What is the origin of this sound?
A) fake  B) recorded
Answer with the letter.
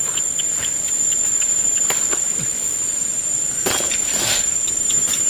B